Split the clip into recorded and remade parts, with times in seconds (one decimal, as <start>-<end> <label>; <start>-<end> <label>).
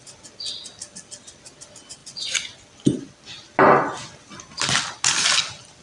0.0-5.8 recorded